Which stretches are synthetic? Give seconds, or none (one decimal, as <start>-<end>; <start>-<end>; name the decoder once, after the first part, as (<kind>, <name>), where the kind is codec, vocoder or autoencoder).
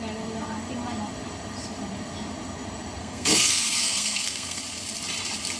3.0-4.6 (codec, SNAC)